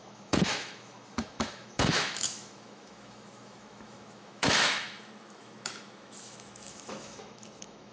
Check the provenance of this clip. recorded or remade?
remade